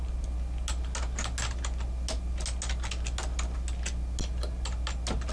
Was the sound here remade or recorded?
recorded